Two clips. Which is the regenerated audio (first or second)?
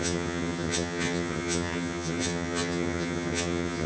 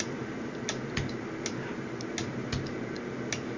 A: first